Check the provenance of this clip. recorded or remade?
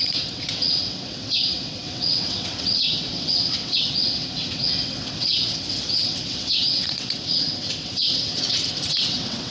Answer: remade